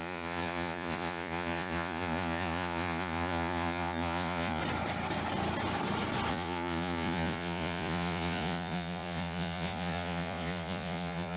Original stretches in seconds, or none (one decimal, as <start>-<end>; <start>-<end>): 4.6-6.3